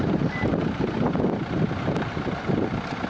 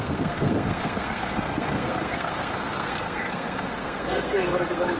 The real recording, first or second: first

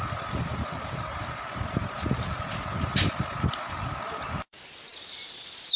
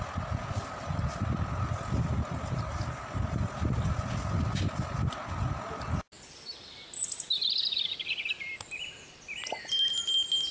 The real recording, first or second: second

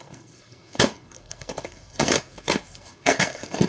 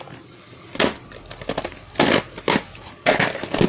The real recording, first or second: second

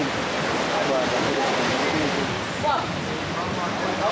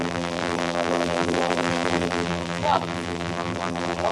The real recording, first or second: first